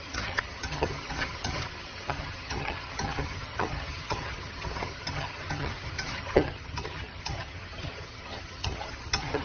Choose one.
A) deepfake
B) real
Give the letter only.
A